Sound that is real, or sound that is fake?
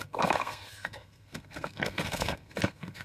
fake